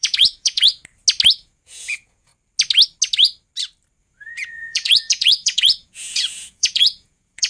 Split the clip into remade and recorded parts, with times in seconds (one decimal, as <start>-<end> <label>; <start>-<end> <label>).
0.0-0.8 remade; 0.8-1.3 recorded; 1.3-2.3 remade; 2.3-4.0 recorded; 4.0-7.5 remade